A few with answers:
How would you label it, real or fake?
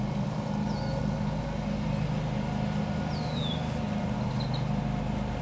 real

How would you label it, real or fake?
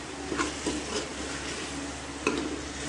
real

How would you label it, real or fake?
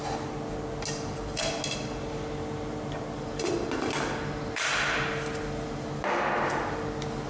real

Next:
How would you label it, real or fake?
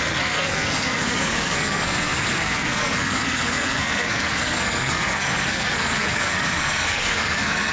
fake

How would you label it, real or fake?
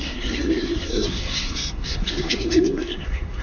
fake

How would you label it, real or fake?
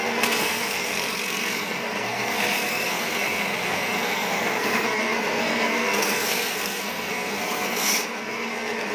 fake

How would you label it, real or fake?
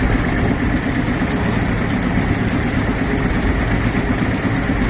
real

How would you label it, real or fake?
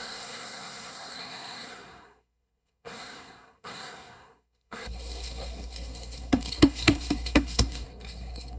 fake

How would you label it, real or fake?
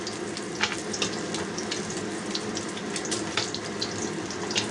real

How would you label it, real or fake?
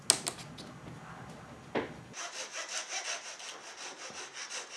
real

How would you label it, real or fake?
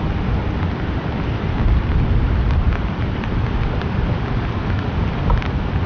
real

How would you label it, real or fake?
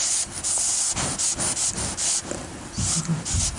real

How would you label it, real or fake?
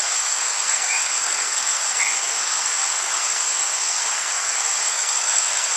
fake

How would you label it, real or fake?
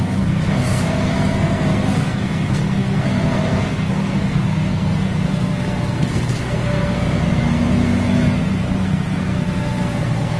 fake